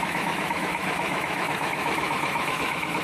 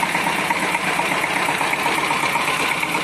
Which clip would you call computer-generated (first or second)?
first